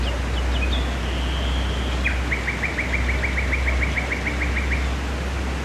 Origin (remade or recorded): recorded